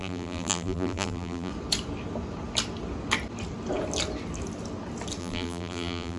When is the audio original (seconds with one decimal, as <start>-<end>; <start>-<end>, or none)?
1.5-5.2